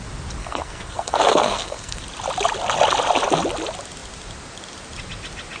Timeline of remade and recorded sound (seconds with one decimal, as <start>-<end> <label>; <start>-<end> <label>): 0.0-0.4 recorded; 0.4-2.0 remade; 2.0-5.6 recorded

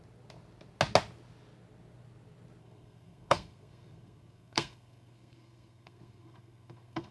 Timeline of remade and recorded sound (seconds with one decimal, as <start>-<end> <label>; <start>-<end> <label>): 0.0-2.6 recorded; 2.6-7.1 remade

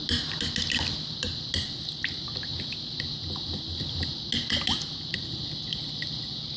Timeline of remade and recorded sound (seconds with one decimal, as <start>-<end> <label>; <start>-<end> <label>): 0.0-6.6 recorded

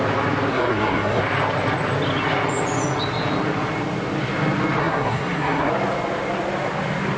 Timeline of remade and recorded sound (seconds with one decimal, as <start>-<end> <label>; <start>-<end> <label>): 0.0-0.5 recorded; 0.5-1.2 remade; 1.2-4.8 recorded; 4.8-5.7 remade; 5.7-7.2 recorded